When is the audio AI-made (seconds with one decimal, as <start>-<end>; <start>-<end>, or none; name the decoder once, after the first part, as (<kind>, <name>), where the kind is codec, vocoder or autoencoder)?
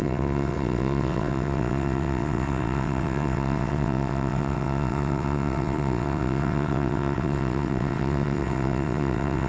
0.0-9.5 (vocoder, WaveNeXt)